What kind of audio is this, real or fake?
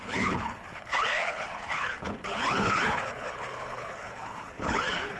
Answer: fake